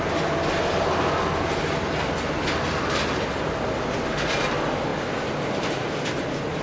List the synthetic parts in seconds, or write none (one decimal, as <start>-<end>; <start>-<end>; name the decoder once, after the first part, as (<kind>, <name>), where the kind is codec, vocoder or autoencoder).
4.9-5.9 (vocoder, BigVGAN v2)

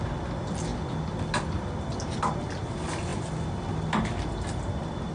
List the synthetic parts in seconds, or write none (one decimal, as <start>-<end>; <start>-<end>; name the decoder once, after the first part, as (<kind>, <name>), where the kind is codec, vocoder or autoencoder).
none

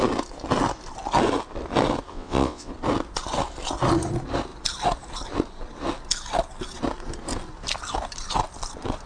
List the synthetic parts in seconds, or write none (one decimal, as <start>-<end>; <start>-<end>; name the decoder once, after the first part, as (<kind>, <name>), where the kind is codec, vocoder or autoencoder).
2.1-2.7 (vocoder, WaveNeXt)